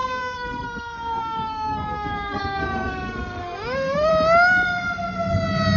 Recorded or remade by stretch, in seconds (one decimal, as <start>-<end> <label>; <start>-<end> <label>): 0.0-4.1 remade; 4.1-5.8 recorded